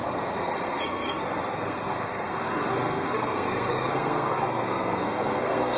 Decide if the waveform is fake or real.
fake